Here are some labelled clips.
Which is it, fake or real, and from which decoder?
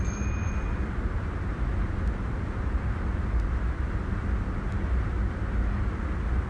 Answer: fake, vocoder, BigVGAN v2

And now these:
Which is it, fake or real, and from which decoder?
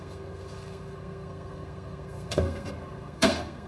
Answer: fake, codec, SNAC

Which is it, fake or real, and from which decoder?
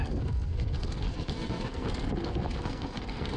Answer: fake, codec, SNAC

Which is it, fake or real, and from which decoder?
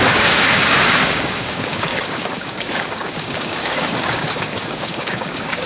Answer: fake, codec, DAC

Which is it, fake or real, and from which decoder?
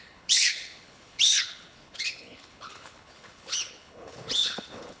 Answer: fake, codec, HILCodec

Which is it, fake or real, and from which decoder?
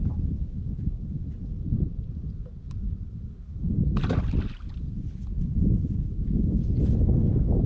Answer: real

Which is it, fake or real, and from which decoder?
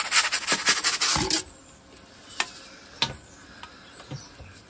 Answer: real